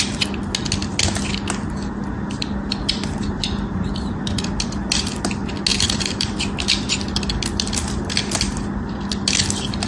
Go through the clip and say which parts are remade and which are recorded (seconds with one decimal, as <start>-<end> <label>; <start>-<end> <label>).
0.0-5.7 recorded; 5.7-6.3 remade; 6.3-9.9 recorded